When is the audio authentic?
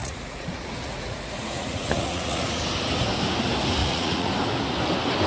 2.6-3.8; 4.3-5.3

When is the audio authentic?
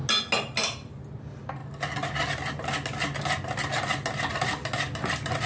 0.0-5.5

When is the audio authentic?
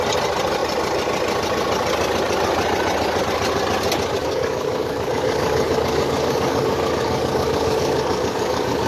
0.0-4.2